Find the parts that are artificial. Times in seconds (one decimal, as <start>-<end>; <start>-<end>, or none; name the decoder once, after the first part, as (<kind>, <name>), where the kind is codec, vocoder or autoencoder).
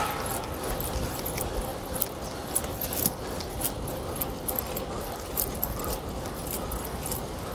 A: none